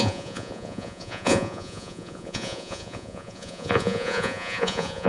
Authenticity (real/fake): fake